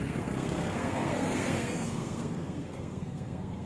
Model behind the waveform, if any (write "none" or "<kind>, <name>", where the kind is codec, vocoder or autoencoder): codec, SNAC